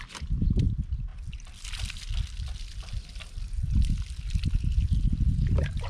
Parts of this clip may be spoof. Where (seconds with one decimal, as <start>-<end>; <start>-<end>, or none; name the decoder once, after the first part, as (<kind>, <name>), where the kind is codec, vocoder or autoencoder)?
none